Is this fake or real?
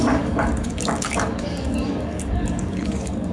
fake